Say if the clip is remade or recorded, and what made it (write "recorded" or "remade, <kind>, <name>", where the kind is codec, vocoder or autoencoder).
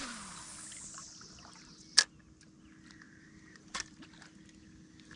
recorded